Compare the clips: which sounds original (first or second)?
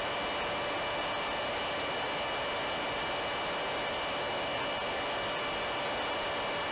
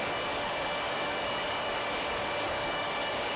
first